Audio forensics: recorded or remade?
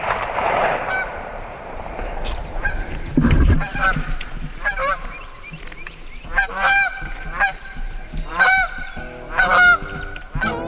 remade